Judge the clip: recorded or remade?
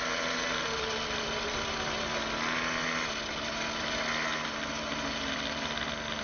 recorded